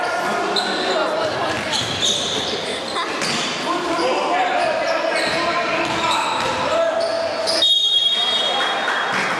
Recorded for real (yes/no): yes